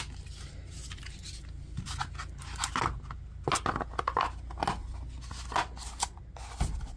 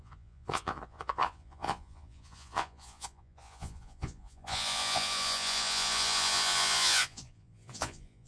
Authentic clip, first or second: first